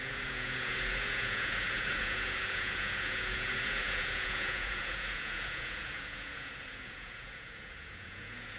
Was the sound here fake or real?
fake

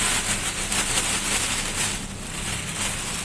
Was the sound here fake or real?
real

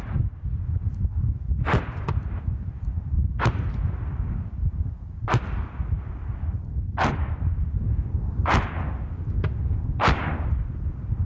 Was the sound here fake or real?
real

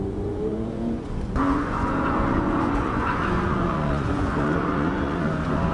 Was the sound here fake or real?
fake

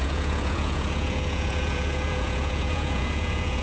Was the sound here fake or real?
fake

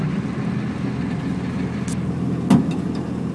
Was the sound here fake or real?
real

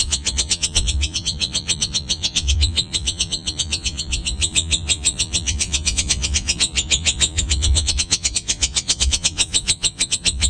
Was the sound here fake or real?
fake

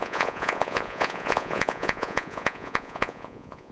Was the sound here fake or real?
fake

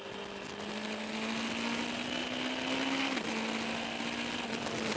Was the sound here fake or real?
real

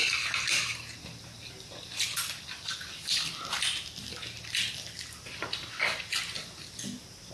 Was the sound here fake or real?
real